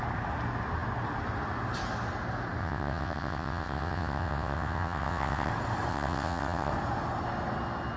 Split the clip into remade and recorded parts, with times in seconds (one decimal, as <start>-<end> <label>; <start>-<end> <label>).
0.0-2.6 recorded; 2.6-5.5 remade; 5.5-5.9 recorded; 5.9-6.7 remade; 6.7-8.0 recorded